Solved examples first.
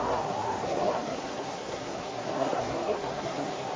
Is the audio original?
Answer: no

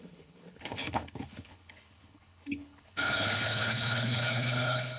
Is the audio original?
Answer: no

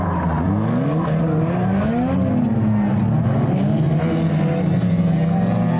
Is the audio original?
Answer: yes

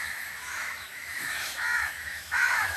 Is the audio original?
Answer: no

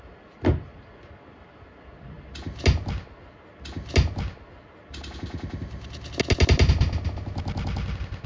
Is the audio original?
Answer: yes